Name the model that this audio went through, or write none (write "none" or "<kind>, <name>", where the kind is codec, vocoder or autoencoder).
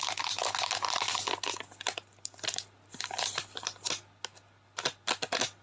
none